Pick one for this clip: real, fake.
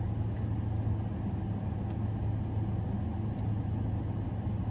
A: real